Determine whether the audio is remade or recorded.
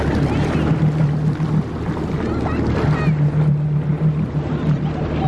recorded